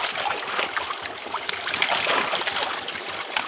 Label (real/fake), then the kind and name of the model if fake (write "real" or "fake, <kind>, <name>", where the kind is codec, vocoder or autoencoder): real